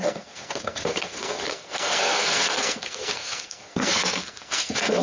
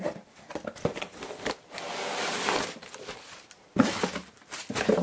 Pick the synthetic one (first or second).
first